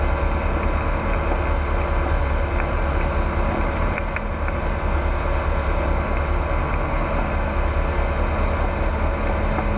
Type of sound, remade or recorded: recorded